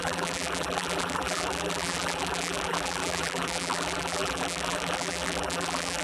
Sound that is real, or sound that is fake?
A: fake